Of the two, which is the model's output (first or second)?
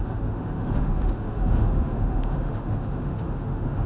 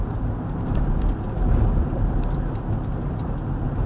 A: first